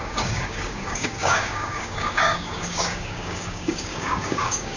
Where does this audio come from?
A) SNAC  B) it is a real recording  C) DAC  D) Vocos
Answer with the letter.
C